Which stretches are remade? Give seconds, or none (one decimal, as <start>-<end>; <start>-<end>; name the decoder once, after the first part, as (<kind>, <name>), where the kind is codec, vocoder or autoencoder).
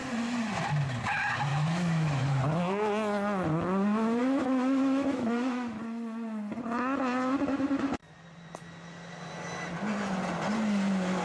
1.5-2.4 (autoencoder, DAC-VAE); 4.2-5.8